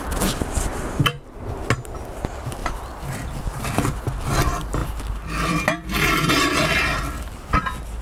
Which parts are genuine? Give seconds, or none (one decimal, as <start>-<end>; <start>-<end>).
0.0-8.0